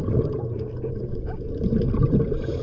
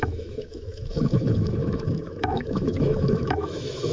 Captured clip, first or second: first